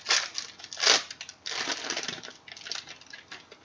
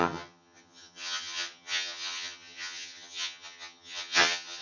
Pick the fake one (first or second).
second